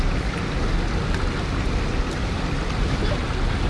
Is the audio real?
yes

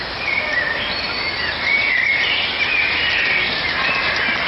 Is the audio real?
yes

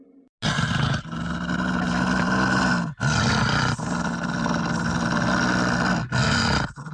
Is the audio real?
yes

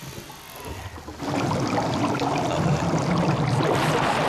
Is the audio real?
yes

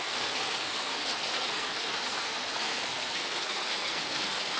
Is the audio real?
no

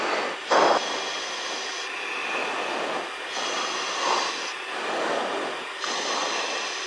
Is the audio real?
yes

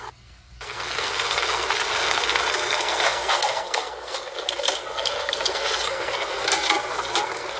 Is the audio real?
no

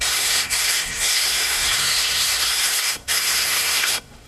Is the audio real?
no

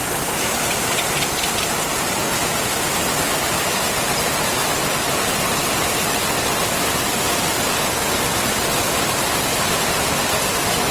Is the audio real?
yes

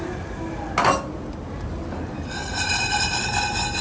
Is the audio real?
yes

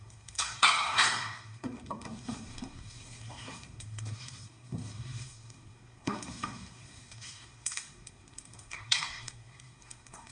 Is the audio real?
no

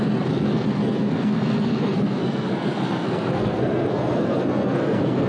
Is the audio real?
no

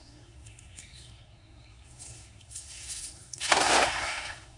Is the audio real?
no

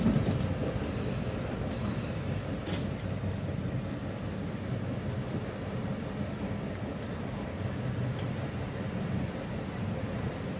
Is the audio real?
yes